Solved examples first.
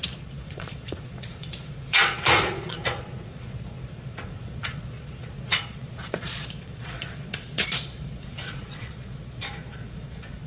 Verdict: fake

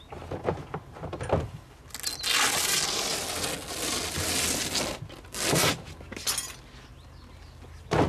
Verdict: real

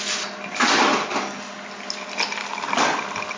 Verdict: real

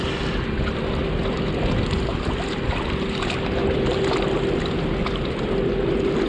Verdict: real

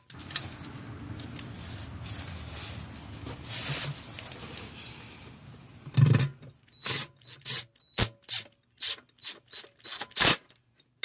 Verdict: real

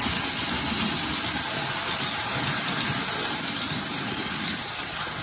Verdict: real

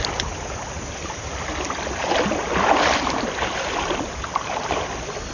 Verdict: real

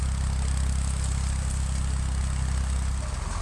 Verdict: real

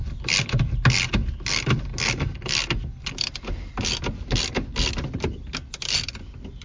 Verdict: real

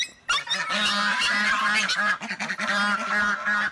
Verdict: real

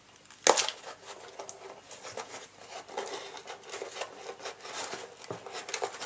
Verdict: real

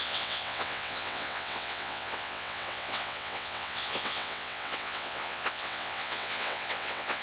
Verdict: fake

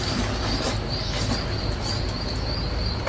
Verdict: real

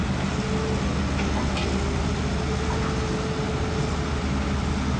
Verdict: real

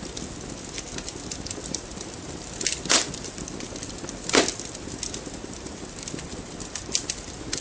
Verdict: real